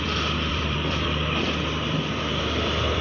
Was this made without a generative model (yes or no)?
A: no